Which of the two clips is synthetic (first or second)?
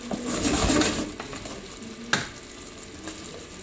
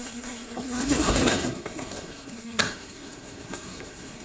second